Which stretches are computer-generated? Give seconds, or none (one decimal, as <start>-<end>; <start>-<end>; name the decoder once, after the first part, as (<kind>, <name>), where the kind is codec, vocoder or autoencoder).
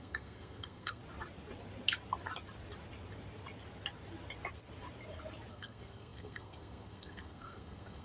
0.0-1.0 (codec, SNAC); 5.5-8.0